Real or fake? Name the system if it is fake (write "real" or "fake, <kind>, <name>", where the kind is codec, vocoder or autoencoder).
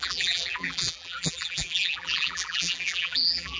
fake, vocoder, BigVGAN v2